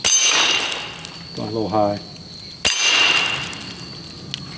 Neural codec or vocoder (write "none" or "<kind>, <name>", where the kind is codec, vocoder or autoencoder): none